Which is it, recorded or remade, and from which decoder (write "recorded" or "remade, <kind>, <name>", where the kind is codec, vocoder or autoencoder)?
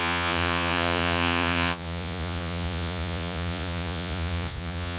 remade, vocoder, Vocos